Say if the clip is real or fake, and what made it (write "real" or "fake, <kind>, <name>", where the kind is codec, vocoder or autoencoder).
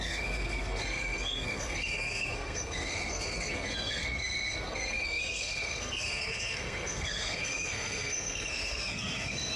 fake, codec, SNAC